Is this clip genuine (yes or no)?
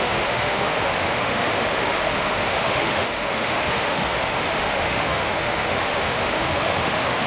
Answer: no